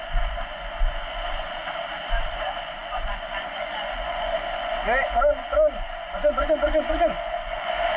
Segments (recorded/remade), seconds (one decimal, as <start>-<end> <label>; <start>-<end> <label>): 0.0-1.6 remade; 1.6-2.3 recorded; 2.3-8.0 remade